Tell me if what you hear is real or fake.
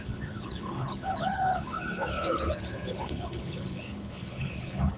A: fake